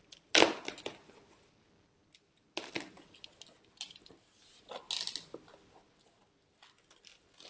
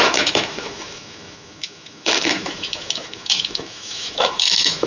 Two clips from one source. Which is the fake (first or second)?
second